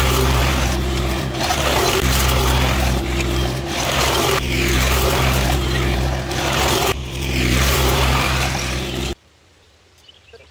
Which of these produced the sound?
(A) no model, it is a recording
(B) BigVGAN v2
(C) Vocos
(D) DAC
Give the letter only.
B